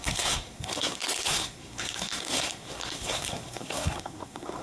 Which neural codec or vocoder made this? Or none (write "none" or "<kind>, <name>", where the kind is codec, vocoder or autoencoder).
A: codec, SNAC